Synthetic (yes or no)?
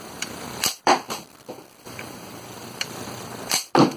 yes